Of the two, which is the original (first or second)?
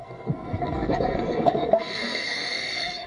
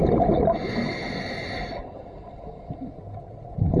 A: second